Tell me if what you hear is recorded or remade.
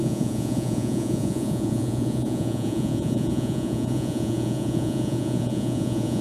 remade